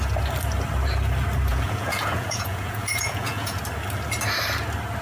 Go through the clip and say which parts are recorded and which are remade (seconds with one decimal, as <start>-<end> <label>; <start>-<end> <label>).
0.0-1.5 recorded; 1.5-3.6 remade; 3.6-5.0 recorded